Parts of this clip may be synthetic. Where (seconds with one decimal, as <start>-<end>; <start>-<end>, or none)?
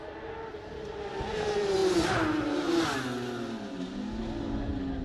none